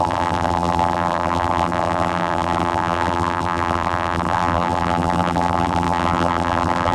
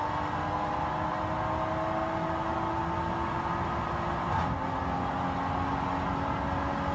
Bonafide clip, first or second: second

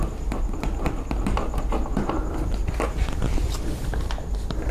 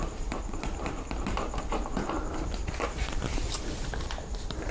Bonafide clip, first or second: first